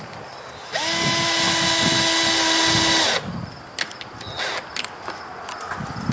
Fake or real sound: real